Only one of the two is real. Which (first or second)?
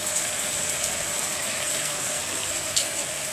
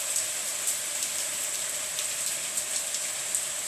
second